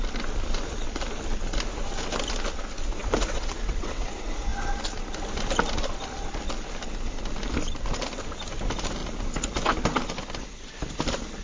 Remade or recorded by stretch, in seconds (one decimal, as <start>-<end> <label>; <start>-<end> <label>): 0.0-3.0 recorded; 3.0-4.1 remade; 4.1-11.4 recorded